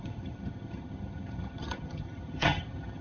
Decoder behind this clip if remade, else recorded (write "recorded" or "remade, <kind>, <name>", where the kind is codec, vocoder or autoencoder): remade, vocoder, HiFi-GAN